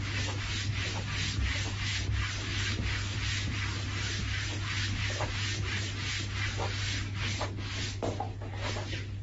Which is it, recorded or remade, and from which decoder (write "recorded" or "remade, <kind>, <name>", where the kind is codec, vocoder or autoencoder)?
recorded